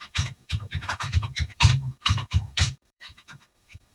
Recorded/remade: remade